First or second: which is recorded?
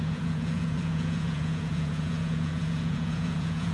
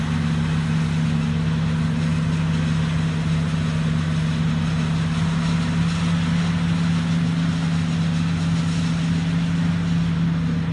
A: second